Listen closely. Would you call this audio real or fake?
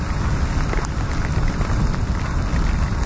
real